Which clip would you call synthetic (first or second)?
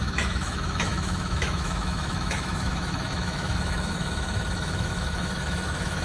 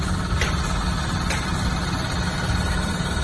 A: first